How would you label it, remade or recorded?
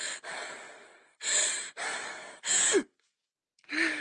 remade